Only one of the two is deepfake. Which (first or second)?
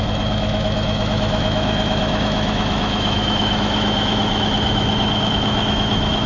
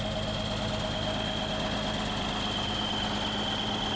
first